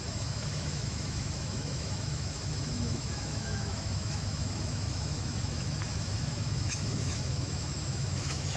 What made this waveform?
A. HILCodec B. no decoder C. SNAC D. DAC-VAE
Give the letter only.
D